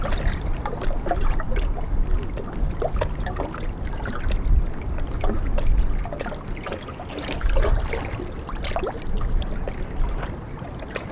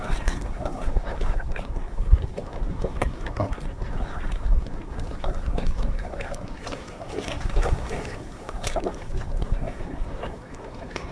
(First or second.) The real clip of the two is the first